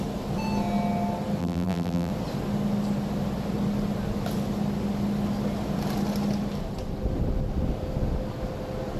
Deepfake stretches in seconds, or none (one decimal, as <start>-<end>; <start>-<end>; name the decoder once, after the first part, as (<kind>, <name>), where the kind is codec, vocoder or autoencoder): 1.4-2.1 (vocoder, BigVGAN v2)

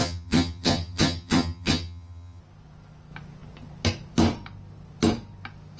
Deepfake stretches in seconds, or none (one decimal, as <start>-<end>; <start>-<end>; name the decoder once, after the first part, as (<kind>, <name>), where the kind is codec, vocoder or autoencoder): 0.0-2.4 (vocoder, HiFi-GAN)

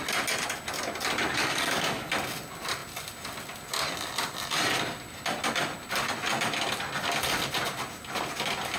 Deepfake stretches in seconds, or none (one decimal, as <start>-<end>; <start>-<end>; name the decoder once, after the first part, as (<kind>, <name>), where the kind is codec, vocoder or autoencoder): 1.4-2.1 (codec, DAC)

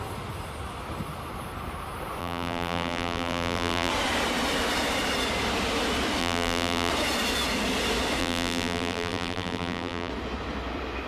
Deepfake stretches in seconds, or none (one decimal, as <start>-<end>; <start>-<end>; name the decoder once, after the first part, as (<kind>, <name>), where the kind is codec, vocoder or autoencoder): 2.2-3.9 (vocoder, BigVGAN v2); 6.2-6.9; 8.2-10.1

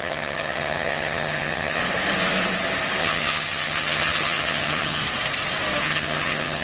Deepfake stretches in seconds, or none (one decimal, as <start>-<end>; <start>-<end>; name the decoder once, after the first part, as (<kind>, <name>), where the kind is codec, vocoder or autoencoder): 0.0-1.8 (vocoder, HiFi-GAN); 3.0-5.0; 5.8-6.6

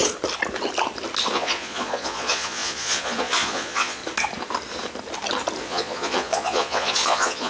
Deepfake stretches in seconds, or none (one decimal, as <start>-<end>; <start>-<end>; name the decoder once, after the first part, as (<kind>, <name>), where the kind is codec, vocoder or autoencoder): 1.3-4.0 (vocoder, Vocos); 5.6-7.5

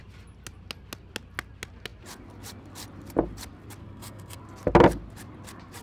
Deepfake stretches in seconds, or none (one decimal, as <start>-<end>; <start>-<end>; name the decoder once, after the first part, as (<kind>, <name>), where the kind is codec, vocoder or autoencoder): 3.8-4.4 (codec, SNAC)